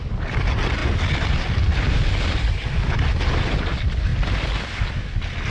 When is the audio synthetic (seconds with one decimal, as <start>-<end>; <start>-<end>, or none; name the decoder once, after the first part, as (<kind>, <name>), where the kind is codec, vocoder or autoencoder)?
none